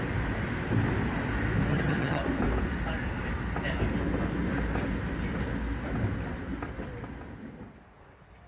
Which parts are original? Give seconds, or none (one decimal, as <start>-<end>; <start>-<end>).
0.0-1.7; 2.2-8.5